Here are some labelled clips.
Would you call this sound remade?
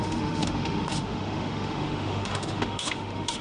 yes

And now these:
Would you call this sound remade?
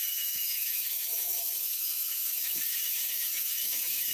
yes